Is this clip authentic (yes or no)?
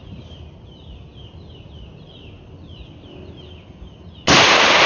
yes